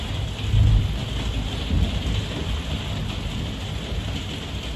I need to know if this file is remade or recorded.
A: recorded